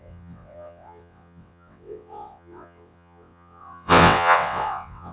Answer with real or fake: fake